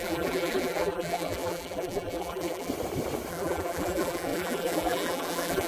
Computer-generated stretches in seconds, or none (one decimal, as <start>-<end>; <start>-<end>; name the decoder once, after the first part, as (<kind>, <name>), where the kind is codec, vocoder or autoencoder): 0.0-2.7 (vocoder, BigVGAN v2); 3.3-5.7